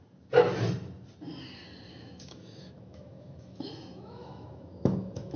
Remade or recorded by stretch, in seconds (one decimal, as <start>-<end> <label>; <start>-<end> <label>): 0.0-1.9 recorded; 1.9-5.4 remade